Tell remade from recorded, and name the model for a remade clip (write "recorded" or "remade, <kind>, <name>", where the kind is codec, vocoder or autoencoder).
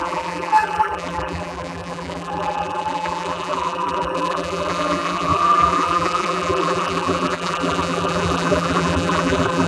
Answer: remade, vocoder, BigVGAN v2